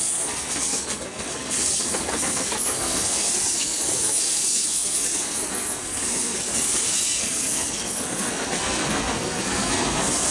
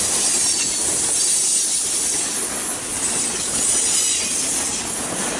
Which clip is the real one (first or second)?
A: second